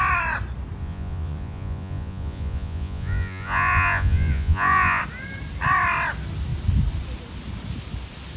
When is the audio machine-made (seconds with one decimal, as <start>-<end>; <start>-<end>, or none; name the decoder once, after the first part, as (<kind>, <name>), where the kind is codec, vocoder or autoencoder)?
0.8-5.0 (vocoder, Vocos)